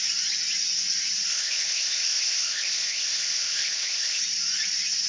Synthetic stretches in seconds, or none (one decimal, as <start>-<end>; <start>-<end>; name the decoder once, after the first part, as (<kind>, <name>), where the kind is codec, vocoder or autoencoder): 1.3-4.2 (codec, ZipCodec)